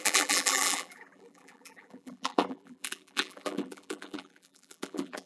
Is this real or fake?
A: fake